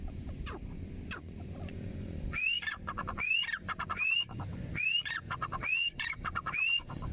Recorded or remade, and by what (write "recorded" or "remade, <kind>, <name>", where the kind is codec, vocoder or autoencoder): remade, vocoder, Vocos